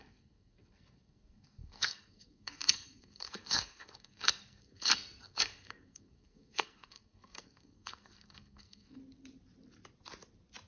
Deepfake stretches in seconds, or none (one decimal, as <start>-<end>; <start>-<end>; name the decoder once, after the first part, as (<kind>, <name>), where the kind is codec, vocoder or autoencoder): 0.0-9.0 (codec, SNAC)

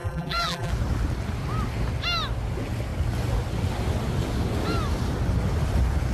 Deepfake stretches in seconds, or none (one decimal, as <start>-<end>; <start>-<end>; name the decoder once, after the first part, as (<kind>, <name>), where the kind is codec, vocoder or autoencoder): 0.0-0.7 (vocoder, BigVGAN v2)

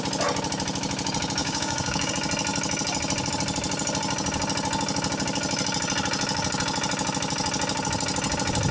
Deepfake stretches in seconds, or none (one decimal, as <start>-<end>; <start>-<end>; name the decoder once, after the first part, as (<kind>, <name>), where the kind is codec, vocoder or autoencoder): 1.4-2.1 (codec, DAC)

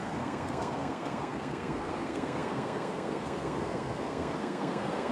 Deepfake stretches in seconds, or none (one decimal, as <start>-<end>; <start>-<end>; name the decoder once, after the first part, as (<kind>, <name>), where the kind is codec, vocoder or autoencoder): 0.0-5.1 (codec, SNAC)